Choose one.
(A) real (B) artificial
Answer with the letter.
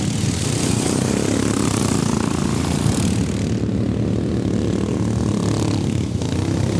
A